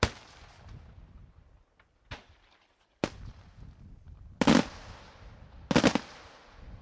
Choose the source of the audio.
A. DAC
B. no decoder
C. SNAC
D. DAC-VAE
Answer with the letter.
B